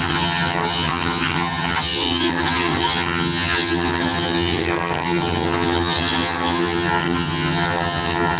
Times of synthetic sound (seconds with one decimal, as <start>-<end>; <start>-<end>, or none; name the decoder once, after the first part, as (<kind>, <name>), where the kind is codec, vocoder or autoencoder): 0.0-8.4 (vocoder, HiFi-GAN)